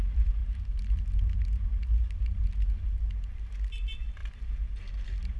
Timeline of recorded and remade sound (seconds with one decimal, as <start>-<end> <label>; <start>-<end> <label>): 0.0-5.4 recorded